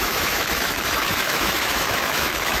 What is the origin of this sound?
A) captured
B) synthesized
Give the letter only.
B